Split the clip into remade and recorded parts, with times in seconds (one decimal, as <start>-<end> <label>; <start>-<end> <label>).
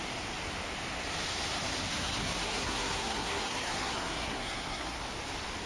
0.0-1.9 recorded; 1.9-5.0 remade; 5.0-5.7 recorded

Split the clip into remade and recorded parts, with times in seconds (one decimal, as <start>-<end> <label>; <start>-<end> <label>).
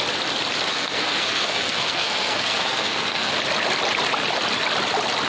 0.0-0.7 recorded; 0.7-3.3 remade; 3.3-5.3 recorded